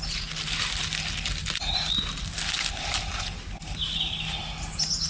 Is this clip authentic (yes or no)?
yes